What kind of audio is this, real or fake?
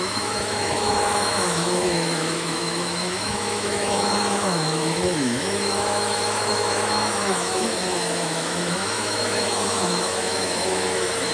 fake